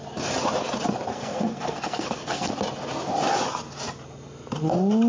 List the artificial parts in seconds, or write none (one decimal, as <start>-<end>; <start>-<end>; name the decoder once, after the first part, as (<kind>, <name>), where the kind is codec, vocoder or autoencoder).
1.1-2.5 (codec, SNAC)